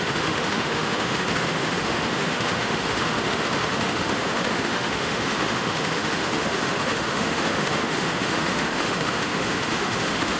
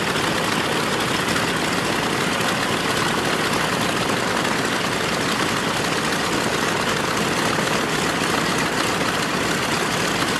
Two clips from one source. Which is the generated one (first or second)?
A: first